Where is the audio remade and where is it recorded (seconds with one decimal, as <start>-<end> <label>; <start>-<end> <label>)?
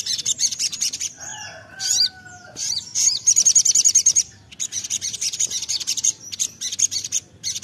0.0-7.6 recorded